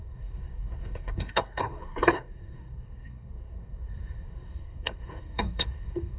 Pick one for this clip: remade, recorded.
remade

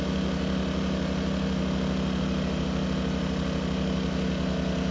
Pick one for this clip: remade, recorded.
recorded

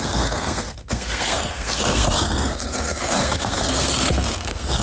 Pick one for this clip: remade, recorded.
remade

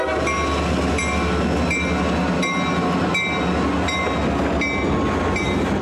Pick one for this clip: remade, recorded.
recorded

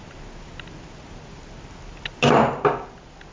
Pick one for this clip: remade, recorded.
recorded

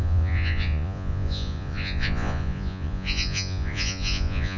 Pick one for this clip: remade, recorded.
remade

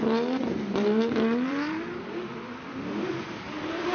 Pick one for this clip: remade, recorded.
remade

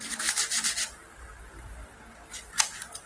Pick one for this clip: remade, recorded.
recorded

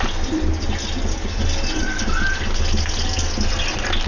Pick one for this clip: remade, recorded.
recorded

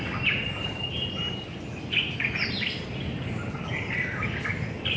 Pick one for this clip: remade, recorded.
recorded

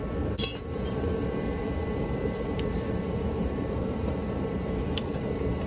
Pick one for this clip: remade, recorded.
remade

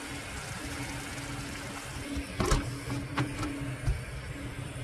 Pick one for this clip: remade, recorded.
recorded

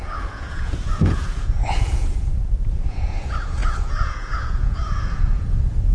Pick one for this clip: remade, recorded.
remade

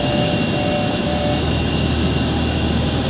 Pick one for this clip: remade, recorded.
recorded